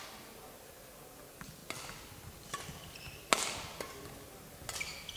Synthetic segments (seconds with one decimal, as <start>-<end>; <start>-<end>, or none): none